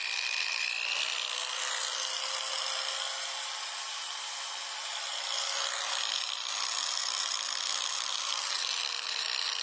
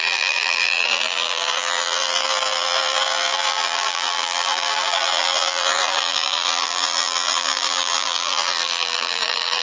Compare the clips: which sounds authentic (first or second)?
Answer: first